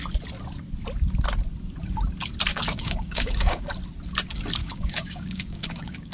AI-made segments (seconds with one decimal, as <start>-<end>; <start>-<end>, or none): 2.5-3.7; 4.6-6.1